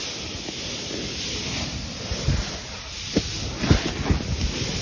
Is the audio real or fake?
real